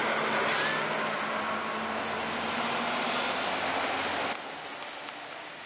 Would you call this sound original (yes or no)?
yes